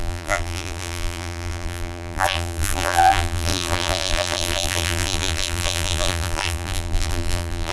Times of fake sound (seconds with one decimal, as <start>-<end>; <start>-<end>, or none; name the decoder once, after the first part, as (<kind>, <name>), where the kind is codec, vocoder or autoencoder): 0.0-7.7 (vocoder, BigVGAN v2)